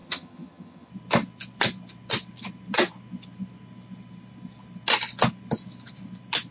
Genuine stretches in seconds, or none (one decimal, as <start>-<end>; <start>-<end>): 0.9-6.5